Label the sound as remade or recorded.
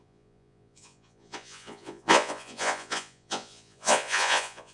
remade